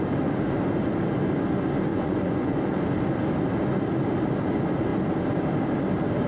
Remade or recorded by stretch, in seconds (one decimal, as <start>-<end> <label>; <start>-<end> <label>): 0.0-1.9 recorded; 1.9-2.6 remade; 2.6-6.3 recorded